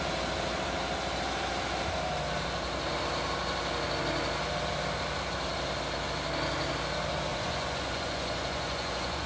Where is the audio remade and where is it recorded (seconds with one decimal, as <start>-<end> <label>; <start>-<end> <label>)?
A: 0.0-7.3 recorded; 7.3-9.3 remade